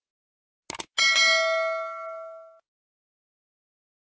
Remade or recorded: recorded